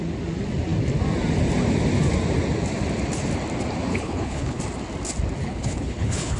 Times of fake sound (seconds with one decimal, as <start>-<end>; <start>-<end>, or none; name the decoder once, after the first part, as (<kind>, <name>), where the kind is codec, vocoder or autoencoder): 3.9-4.6 (codec, HILCodec); 5.4-6.4